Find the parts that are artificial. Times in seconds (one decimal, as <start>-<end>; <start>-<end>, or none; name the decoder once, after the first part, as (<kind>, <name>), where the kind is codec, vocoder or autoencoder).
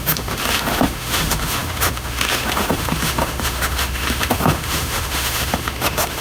0.0-6.2 (autoencoder, DAC-VAE)